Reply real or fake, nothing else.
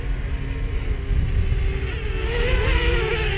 real